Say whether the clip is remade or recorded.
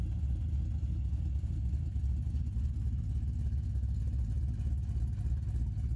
recorded